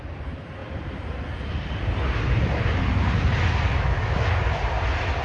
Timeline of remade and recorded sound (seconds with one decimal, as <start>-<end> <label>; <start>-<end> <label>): 0.0-3.7 recorded; 3.7-4.3 remade; 4.3-5.2 recorded